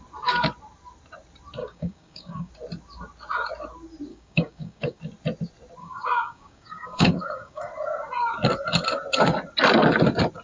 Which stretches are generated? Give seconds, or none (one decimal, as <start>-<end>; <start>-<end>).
1.6-2.5; 4.1-5.0; 5.8-7.6